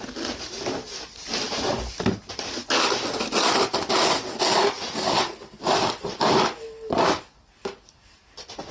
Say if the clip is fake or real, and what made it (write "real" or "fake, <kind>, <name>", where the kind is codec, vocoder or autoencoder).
real